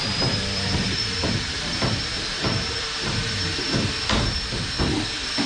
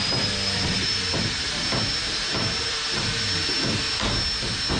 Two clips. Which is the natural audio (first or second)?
second